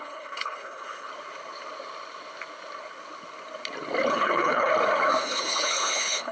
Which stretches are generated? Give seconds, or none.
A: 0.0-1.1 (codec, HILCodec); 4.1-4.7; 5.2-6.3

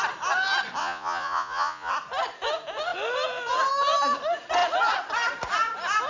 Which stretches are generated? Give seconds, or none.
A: 0.8-1.9 (vocoder, Vocos)

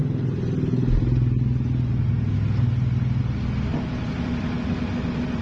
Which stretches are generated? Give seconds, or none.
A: none

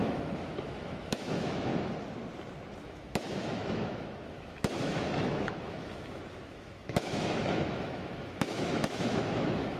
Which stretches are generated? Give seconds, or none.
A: 0.0-1.7 (autoencoder, DAC-VAE); 2.8-9.8

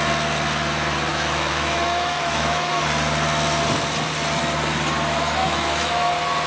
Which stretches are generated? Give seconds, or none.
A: 1.1-2.8 (autoencoder, DAC-VAE); 5.4-6.1

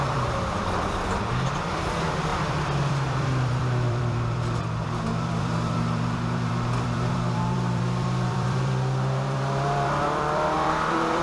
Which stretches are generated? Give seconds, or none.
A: 0.0-11.2 (vocoder, BigVGAN v2)

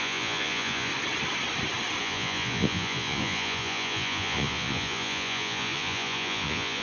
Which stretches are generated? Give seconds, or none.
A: 0.0-0.9 (vocoder, Vocos); 2.0-6.8